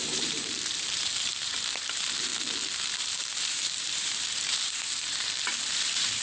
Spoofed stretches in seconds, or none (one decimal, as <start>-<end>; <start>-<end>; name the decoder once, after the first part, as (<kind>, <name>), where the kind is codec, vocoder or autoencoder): 0.0-2.3 (vocoder, BigVGAN v2); 3.0-6.2